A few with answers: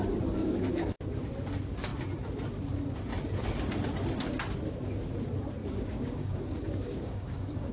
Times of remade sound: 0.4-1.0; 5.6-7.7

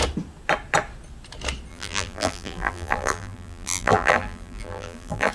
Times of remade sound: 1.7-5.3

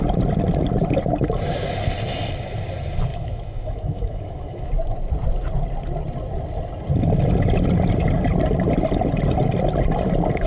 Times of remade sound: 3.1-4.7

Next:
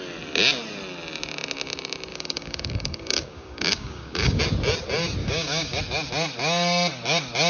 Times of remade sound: 2.1-4.4; 5.2-5.8